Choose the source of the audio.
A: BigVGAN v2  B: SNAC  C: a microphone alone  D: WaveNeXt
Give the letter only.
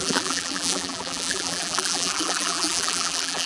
A